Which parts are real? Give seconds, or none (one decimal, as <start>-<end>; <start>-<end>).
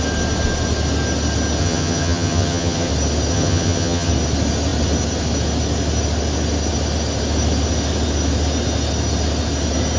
0.0-1.6; 2.9-3.3; 4.1-10.0